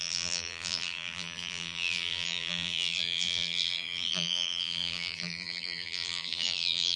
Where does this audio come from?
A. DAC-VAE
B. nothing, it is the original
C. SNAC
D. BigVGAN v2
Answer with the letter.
D